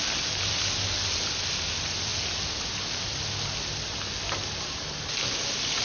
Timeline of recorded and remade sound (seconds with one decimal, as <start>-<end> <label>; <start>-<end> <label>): 0.0-5.8 recorded